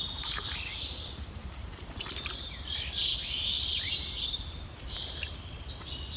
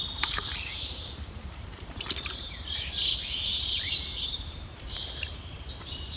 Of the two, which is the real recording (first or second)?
first